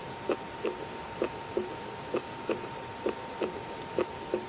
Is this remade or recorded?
recorded